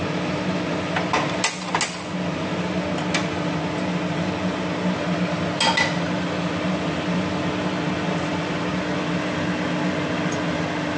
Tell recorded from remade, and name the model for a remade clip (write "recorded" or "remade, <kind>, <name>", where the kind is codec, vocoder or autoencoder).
recorded